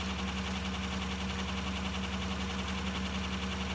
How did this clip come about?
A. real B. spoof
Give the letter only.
A